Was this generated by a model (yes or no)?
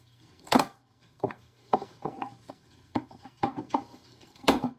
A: yes